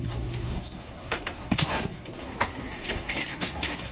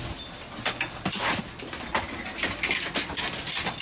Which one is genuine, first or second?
second